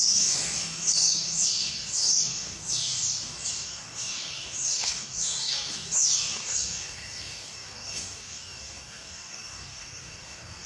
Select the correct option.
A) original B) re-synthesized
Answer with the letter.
B